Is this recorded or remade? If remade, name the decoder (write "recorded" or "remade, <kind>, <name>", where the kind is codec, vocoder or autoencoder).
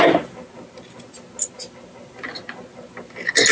recorded